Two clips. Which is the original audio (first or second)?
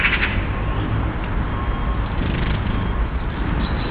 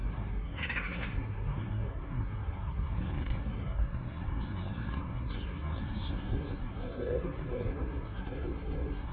first